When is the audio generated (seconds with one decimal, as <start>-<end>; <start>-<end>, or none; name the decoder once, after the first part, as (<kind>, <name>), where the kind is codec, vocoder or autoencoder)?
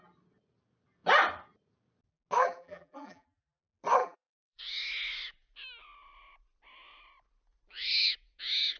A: 2.4-3.6 (vocoder, BigVGAN v2); 4.0-4.6